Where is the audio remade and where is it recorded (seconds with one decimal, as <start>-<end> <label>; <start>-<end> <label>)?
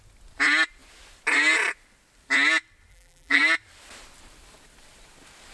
0.0-2.9 recorded; 2.9-3.4 remade; 3.4-5.5 recorded